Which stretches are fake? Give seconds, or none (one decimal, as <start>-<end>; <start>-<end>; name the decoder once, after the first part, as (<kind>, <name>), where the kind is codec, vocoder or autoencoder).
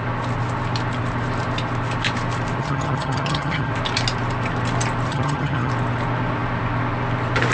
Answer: 2.6-3.7 (vocoder, HiFi-GAN); 5.1-5.7